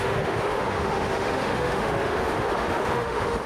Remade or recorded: remade